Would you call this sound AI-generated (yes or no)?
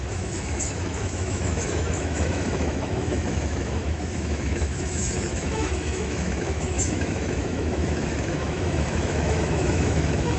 yes